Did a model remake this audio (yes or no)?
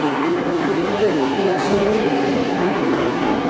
yes